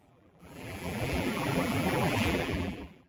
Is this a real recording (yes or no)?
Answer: no